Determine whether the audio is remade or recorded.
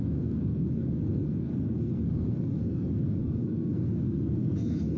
remade